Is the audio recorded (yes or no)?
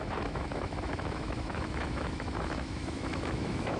no